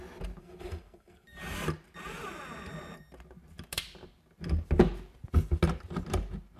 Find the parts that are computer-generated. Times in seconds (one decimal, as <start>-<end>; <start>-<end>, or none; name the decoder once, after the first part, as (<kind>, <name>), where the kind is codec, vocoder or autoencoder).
0.4-1.4 (codec, SNAC)